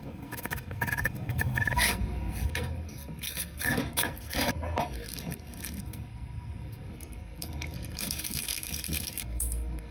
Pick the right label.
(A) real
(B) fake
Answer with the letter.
B